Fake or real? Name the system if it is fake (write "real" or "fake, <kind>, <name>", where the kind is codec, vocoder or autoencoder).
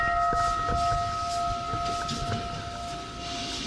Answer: real